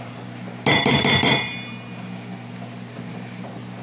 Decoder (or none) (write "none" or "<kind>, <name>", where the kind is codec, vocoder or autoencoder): none